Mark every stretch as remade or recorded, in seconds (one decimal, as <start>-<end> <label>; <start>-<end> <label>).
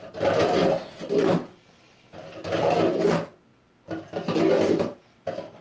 0.0-5.6 recorded